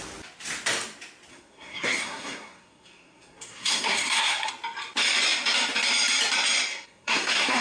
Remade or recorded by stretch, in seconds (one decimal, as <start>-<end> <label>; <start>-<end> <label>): 0.0-1.3 recorded; 1.3-4.5 remade; 4.5-6.7 recorded; 6.7-7.6 remade